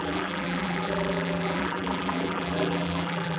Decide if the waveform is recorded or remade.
remade